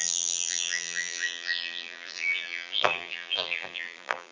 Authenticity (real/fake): fake